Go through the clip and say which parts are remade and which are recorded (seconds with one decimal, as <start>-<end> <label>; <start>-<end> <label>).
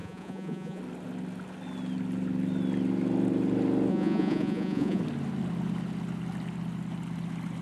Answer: 0.0-0.8 remade; 0.8-3.9 recorded; 3.9-5.0 remade; 5.0-7.6 recorded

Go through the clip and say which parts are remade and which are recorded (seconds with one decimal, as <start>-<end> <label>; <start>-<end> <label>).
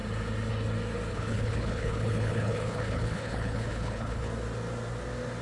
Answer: 0.0-1.1 recorded; 1.1-4.3 remade; 4.3-5.4 recorded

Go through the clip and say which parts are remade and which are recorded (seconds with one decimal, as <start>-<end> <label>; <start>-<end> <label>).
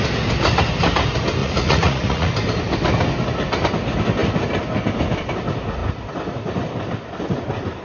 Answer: 0.0-1.4 recorded; 1.4-2.3 remade; 2.3-7.8 recorded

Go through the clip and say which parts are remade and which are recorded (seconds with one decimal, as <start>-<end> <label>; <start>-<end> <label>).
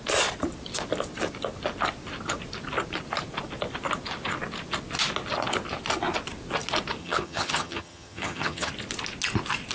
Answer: 0.0-7.0 recorded; 7.0-8.7 remade; 8.7-9.7 recorded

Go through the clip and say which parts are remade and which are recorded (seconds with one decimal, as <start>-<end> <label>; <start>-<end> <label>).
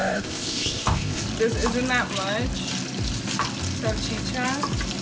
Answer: 0.0-1.2 remade; 1.2-5.0 recorded